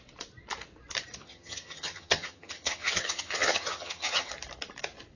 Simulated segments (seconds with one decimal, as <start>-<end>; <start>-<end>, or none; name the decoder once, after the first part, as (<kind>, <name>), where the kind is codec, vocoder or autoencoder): 1.2-4.3 (vocoder, HiFi-GAN)